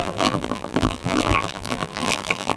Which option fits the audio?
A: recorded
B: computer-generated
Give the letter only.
B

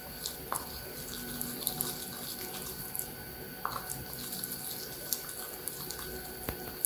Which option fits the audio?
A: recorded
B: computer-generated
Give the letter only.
A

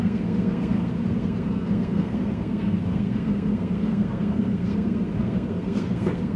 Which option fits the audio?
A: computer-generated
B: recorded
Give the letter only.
A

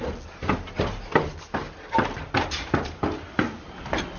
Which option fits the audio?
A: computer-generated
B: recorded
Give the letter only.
B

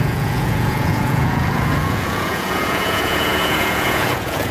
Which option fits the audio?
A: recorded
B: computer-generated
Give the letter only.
B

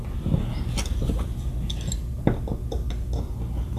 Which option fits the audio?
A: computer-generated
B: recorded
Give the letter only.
B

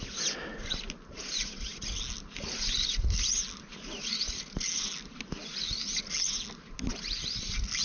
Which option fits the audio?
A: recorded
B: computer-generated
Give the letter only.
A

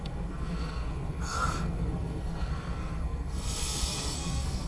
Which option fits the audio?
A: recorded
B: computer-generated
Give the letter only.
B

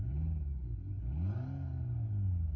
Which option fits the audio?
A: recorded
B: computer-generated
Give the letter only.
A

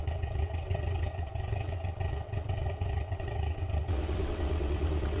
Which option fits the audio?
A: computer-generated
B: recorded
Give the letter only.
A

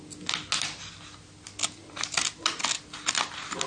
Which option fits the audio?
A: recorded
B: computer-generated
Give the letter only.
A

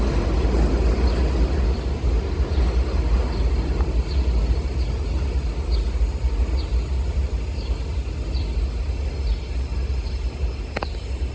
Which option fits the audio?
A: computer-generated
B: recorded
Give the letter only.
B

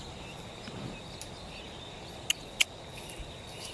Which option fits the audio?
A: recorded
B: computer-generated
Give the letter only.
A